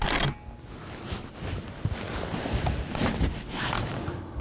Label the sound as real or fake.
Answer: real